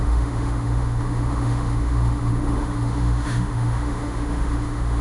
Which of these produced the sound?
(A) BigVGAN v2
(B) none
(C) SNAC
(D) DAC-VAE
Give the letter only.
D